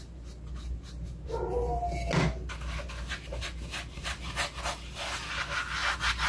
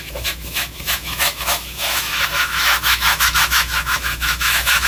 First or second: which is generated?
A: second